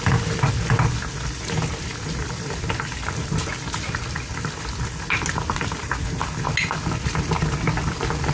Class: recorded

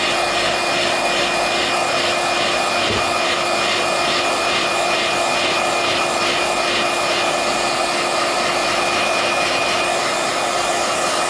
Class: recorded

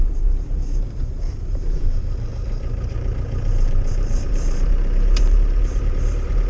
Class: remade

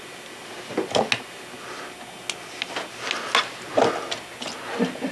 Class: recorded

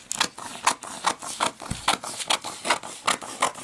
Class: recorded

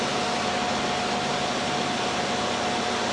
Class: recorded